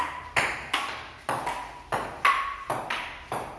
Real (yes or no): yes